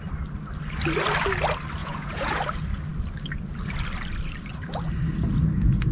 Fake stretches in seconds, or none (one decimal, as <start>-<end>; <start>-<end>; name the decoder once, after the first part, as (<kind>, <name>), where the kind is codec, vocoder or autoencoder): 1.8-2.4 (vocoder, Vocos)